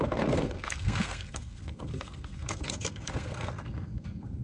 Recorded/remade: remade